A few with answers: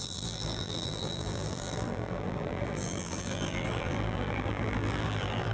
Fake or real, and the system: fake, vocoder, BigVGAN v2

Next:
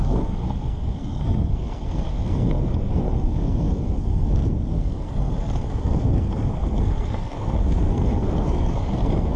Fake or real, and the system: fake, codec, SNAC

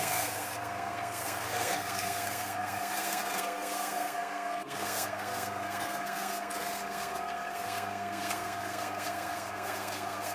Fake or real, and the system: fake, codec, SNAC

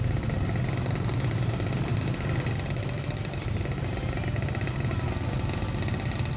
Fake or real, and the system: real